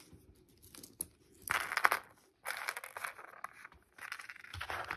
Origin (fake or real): real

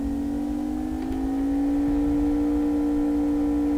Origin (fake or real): real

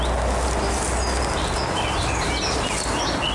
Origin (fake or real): real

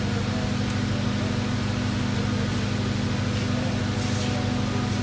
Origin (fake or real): real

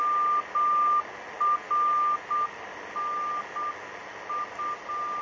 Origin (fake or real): real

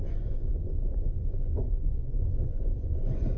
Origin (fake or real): fake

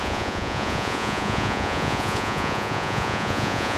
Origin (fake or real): fake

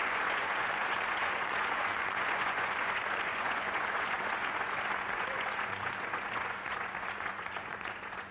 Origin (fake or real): fake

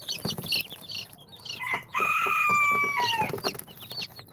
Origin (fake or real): real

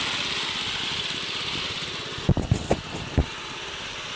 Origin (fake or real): real